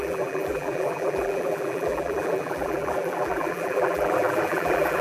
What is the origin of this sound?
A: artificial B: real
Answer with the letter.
A